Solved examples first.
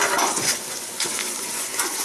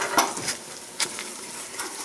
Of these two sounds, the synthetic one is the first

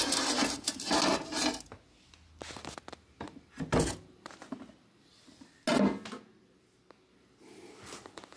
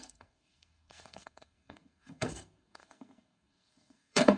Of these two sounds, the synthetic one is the second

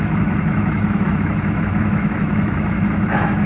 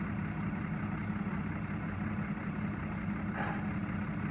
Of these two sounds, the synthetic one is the first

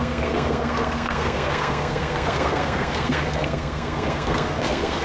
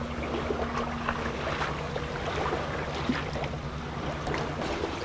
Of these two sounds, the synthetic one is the first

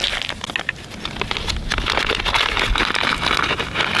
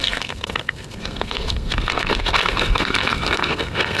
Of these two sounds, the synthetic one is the second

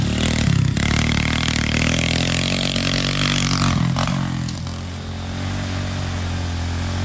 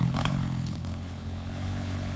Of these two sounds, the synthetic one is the second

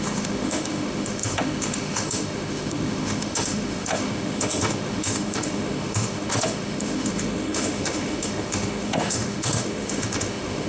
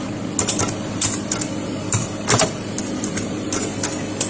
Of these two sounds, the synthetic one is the first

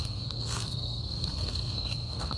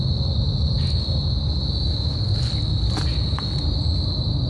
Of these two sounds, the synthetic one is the first